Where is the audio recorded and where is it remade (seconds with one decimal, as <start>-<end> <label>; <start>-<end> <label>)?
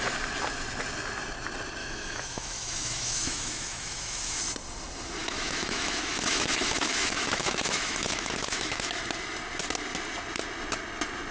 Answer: 0.0-1.8 recorded; 1.8-4.4 remade; 4.4-5.2 recorded; 5.2-9.0 remade; 9.0-11.3 recorded